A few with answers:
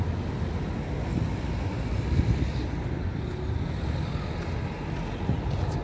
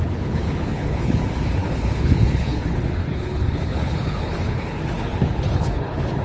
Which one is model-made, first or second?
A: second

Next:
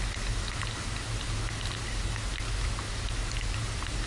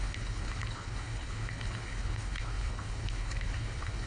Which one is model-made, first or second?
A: second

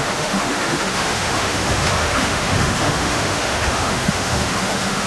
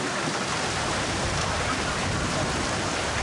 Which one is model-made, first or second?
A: first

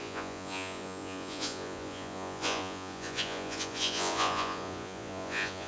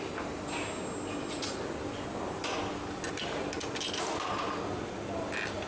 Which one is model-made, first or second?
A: first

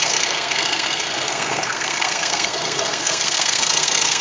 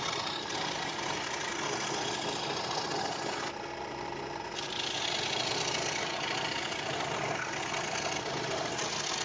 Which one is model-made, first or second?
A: first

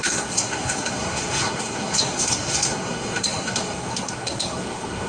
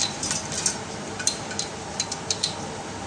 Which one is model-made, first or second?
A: first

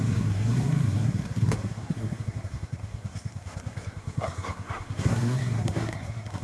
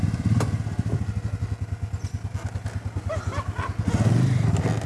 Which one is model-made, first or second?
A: first